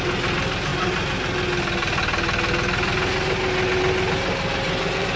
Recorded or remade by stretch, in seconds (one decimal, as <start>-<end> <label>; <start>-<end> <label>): 0.0-4.5 recorded; 4.5-5.2 remade